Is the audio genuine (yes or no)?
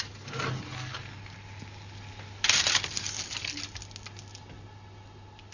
yes